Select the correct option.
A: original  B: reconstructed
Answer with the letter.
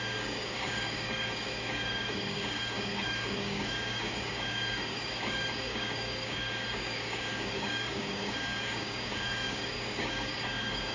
B